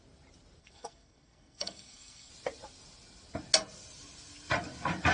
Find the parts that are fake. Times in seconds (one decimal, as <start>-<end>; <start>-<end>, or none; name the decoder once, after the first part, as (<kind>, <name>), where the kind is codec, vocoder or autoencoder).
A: 0.6-2.3 (codec, SNAC)